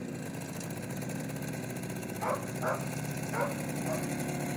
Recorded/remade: recorded